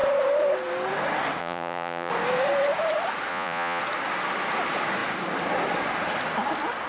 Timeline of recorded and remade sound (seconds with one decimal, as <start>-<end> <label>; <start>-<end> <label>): 0.0-1.4 recorded; 1.4-2.1 remade; 2.1-3.3 recorded; 3.3-3.8 remade; 3.8-6.9 recorded